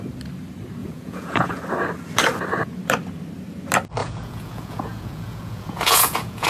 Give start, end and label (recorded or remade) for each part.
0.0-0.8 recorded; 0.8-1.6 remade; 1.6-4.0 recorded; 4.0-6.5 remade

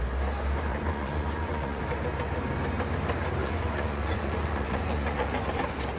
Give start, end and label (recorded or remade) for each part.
0.0-0.7 recorded; 0.7-1.8 remade; 1.8-3.4 recorded; 3.4-5.5 remade; 5.5-6.0 recorded

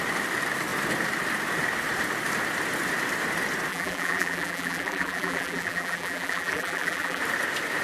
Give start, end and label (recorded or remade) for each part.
0.0-3.7 recorded; 3.7-7.2 remade; 7.2-7.8 recorded

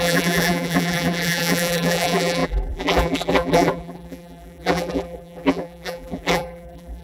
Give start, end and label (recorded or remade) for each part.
0.0-7.0 remade

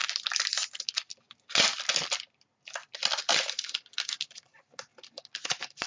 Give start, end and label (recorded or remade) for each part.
0.0-5.9 recorded

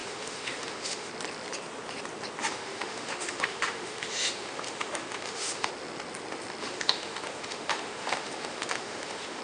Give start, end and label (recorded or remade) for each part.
0.0-1.1 remade; 1.1-2.4 recorded; 2.4-5.7 remade; 5.7-6.6 recorded; 6.6-9.4 remade